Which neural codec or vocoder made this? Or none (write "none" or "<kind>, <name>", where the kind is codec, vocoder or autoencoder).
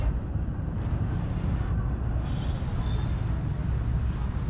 none